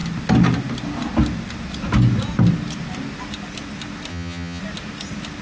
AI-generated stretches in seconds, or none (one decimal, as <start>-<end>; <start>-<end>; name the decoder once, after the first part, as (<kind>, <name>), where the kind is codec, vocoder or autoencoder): 4.1-4.6 (vocoder, HiFi-GAN)